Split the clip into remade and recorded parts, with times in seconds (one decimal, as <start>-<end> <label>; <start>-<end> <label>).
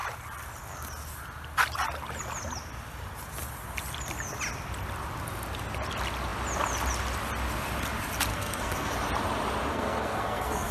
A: 0.0-8.3 recorded; 8.3-8.9 remade; 8.9-9.7 recorded; 9.7-10.7 remade